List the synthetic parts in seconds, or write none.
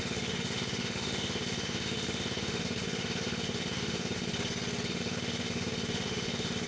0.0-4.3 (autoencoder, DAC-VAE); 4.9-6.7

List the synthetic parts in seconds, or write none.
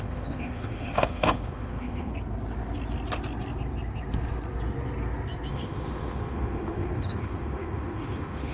0.0-2.1 (autoencoder, DAC-VAE); 5.5-8.5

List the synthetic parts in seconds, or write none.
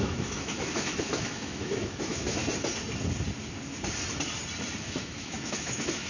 0.0-2.4 (autoencoder, DAC-VAE); 4.8-6.1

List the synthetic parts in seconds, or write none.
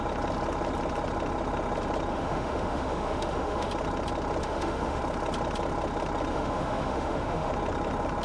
2.1-3.7 (autoencoder, DAC-VAE); 4.4-5.0; 6.3-7.5